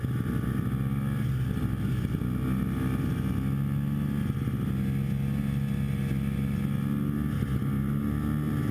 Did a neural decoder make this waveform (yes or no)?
no